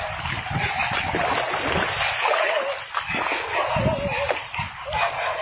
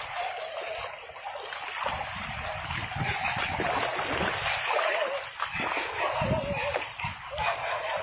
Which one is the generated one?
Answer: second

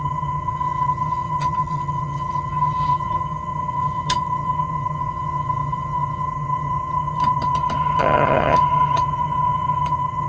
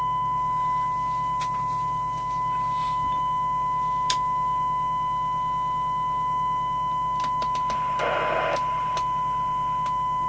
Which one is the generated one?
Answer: first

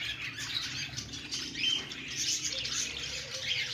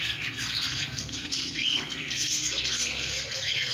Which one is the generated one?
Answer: second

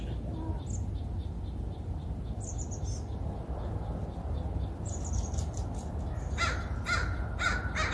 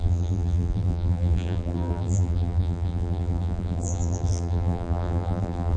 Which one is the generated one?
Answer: second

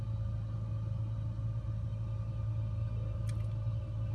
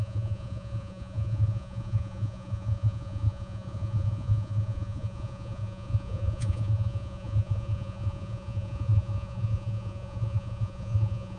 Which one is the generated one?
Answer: second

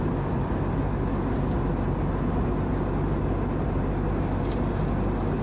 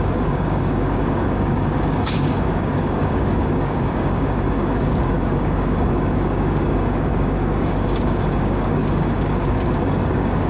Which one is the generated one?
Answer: second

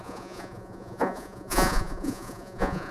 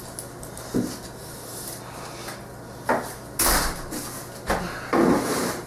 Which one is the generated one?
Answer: first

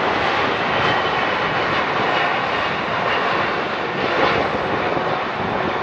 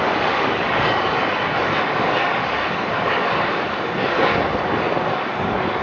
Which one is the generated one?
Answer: second